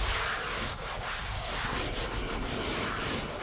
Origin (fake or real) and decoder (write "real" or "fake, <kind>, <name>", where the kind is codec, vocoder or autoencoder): real